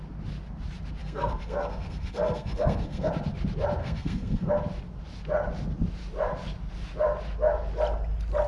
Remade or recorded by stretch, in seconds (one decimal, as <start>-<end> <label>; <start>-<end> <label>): 0.0-1.0 recorded; 1.0-3.1 remade; 3.1-3.8 recorded; 3.8-4.5 remade; 4.5-8.5 recorded